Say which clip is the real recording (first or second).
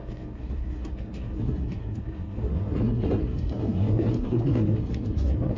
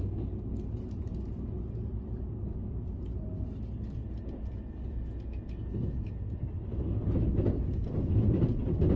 second